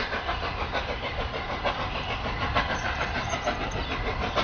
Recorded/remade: recorded